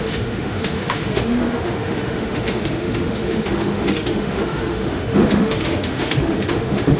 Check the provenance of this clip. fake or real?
fake